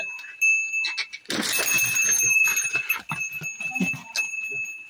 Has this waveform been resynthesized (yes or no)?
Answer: no